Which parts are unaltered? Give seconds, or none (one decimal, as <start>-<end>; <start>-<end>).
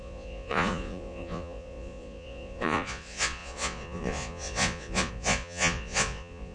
none